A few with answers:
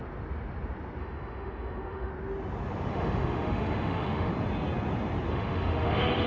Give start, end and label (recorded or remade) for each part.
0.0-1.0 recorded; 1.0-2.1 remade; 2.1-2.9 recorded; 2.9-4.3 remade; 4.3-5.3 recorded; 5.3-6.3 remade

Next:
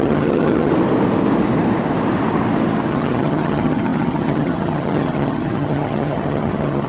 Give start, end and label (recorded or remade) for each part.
0.0-0.7 remade; 0.7-2.9 recorded; 2.9-6.9 remade

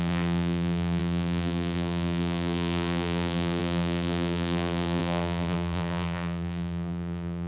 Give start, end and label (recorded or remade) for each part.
0.0-7.5 remade

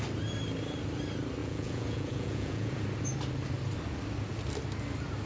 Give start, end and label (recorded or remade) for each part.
0.0-1.4 recorded; 1.4-2.8 remade; 2.8-5.3 recorded

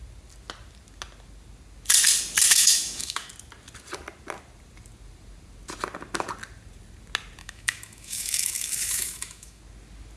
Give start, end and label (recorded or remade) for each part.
0.0-2.5 recorded; 2.5-3.3 remade; 3.3-7.4 recorded; 7.4-9.6 remade; 9.6-10.2 recorded

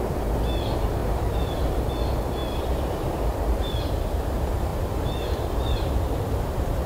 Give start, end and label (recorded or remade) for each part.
0.0-1.0 recorded; 1.0-1.9 remade; 1.9-2.4 recorded; 2.4-3.8 remade; 3.8-4.7 recorded; 4.7-6.9 remade

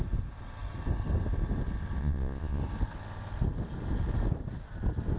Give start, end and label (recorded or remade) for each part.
0.0-2.0 recorded; 2.0-2.6 remade; 2.6-5.2 recorded

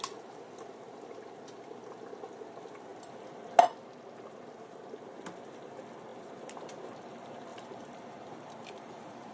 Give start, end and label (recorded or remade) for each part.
0.0-7.5 recorded; 7.5-9.3 remade